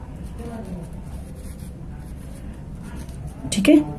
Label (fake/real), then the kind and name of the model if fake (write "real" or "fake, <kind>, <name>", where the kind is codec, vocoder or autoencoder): real